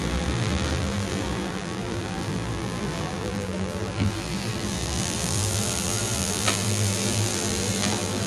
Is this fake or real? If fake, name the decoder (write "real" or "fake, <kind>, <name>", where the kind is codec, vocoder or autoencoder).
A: fake, vocoder, BigVGAN v2